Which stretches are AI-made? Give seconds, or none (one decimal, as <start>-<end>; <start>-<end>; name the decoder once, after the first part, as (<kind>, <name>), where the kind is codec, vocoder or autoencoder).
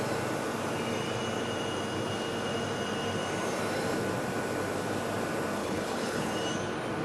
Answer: 5.6-6.3 (codec, HILCodec)